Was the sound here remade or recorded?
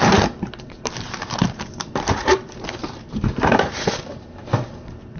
remade